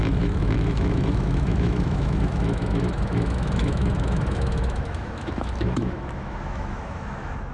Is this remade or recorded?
remade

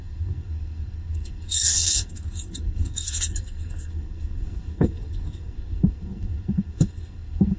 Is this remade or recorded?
remade